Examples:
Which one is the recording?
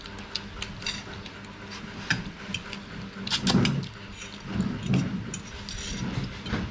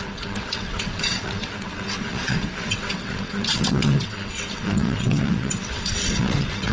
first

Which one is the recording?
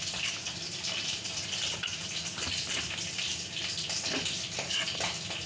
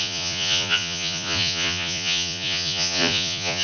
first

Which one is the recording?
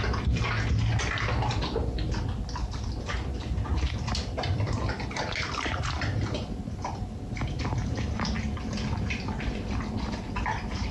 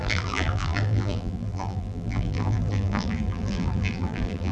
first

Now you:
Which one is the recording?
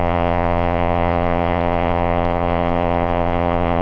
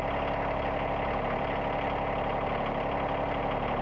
second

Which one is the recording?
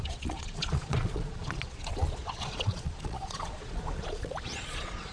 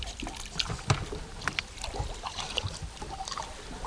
second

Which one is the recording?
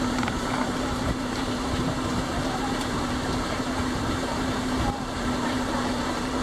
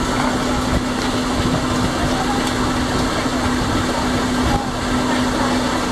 second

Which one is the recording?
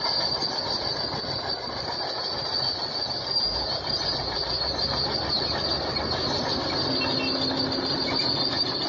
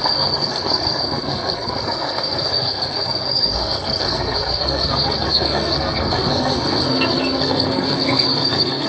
first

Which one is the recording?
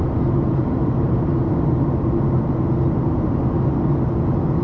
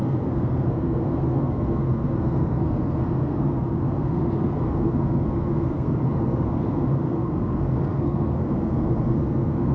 first